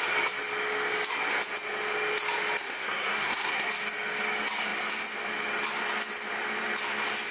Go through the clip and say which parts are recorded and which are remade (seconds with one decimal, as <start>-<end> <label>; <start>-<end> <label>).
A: 0.0-2.6 recorded; 2.6-3.7 remade; 3.7-7.3 recorded